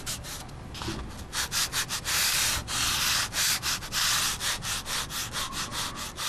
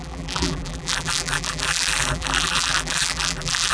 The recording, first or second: first